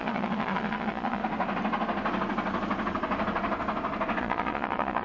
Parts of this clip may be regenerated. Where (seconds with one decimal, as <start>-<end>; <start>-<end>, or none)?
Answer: 0.0-1.2; 4.2-5.0

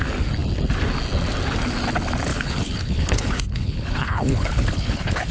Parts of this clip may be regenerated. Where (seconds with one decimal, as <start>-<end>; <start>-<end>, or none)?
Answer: 2.3-5.3